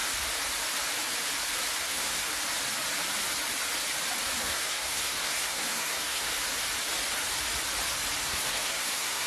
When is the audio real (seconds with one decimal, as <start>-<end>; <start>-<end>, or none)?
0.0-1.8; 2.3-4.4; 6.3-8.2